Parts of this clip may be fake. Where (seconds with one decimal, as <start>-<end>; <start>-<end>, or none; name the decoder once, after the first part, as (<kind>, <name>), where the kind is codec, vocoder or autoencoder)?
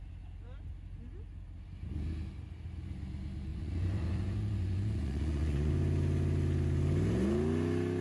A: 3.5-5.7 (vocoder, Vocos)